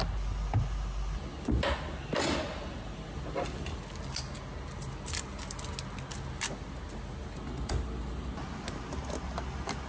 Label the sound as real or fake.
real